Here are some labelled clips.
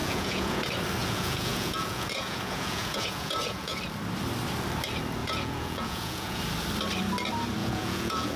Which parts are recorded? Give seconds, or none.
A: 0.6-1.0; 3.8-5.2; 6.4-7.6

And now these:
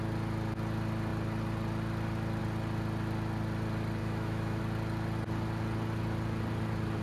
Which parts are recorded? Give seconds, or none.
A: 0.0-4.0; 4.6-7.0

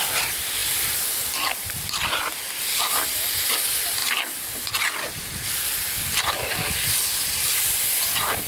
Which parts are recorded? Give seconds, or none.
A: 0.0-8.5

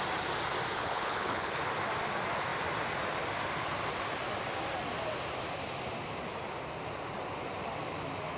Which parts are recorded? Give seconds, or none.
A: 0.0-0.7; 1.6-8.4

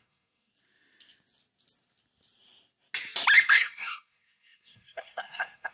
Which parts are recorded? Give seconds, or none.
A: 0.5-3.5